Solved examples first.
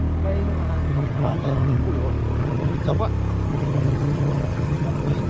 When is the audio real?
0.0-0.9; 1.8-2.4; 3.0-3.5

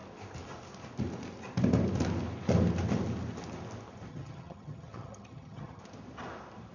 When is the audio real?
0.0-4.1; 5.8-6.7

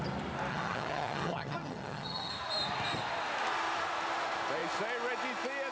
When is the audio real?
0.0-0.5; 2.3-5.7

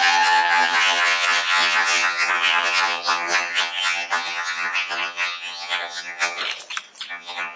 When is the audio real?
6.4-7.1

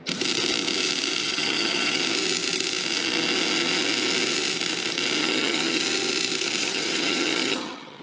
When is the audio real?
0.0-1.2; 2.0-5.2; 5.8-6.6